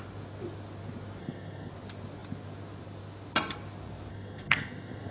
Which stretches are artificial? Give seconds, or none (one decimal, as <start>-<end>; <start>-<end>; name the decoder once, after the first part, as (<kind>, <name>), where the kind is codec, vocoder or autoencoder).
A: 1.2-1.7 (codec, SNAC); 4.1-5.1